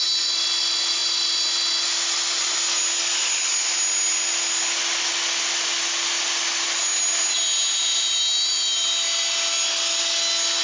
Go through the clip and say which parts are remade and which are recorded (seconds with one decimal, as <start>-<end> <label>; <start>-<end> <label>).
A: 0.0-10.6 recorded